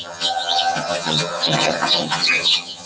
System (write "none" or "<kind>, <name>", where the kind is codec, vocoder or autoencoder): vocoder, HiFi-GAN